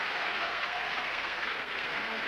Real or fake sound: fake